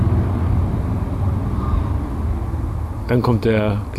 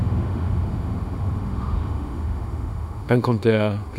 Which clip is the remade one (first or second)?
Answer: second